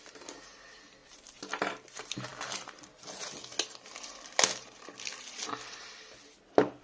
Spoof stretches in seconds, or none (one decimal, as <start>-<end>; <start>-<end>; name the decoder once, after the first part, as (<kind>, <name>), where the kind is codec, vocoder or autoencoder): none